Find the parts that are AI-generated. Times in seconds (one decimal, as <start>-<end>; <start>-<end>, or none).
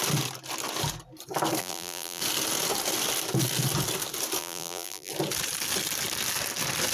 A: 1.6-2.2; 4.4-5.1